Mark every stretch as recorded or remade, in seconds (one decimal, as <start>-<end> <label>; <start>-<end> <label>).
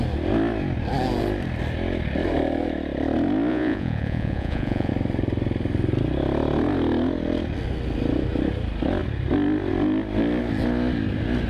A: 0.0-3.5 recorded; 3.5-4.9 remade; 4.9-11.5 recorded